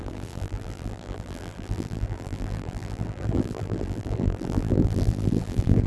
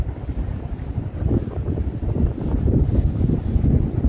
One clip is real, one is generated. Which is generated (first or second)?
first